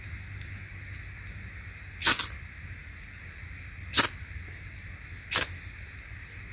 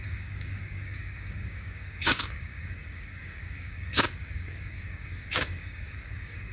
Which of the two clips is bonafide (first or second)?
first